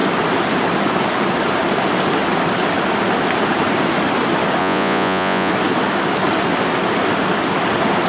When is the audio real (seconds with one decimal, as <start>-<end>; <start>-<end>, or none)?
0.0-4.6; 5.5-8.1